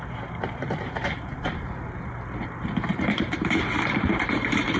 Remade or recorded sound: remade